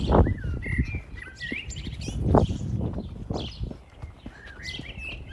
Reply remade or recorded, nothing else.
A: recorded